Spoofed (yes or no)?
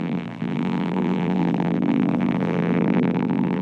yes